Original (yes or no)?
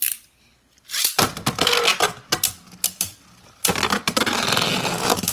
yes